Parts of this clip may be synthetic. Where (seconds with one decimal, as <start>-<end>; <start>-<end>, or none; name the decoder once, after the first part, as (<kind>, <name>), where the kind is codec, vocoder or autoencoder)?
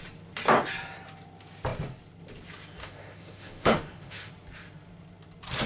2.8-4.3 (autoencoder, DAC-VAE)